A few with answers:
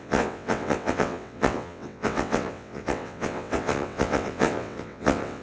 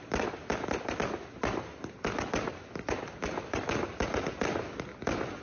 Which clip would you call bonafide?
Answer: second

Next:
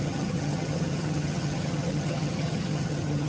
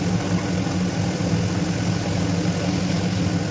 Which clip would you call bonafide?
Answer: second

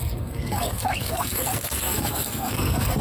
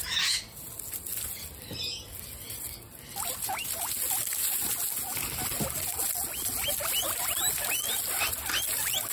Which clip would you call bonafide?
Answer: second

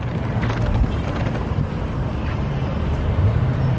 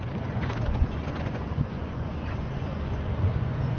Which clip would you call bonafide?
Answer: first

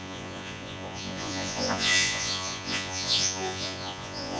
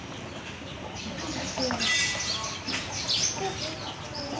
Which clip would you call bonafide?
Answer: second